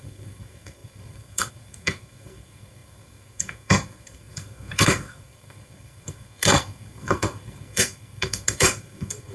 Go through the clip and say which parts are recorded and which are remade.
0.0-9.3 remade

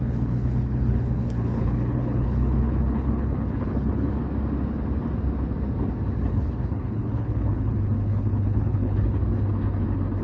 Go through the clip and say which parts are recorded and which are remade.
0.0-4.2 remade; 4.2-6.3 recorded; 6.3-9.2 remade; 9.2-10.2 recorded

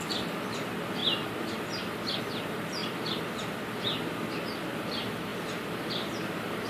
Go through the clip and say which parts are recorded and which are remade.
0.0-5.3 recorded; 5.3-6.7 remade

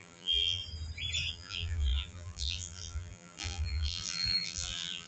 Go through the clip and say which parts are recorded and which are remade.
0.0-0.6 remade; 0.6-1.3 recorded; 1.3-5.1 remade

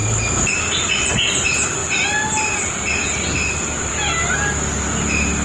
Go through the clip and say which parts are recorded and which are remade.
0.0-0.9 remade; 0.9-1.8 recorded; 1.8-3.9 remade; 3.9-5.4 recorded